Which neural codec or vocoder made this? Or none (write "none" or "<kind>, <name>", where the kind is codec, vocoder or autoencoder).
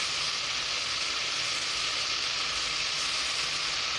none